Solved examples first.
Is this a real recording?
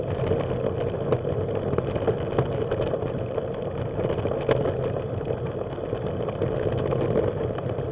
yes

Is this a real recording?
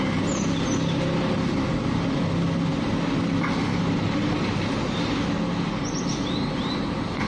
yes